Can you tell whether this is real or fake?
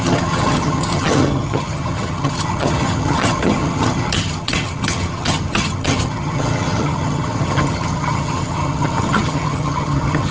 fake